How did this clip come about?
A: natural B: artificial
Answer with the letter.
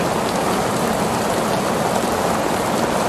A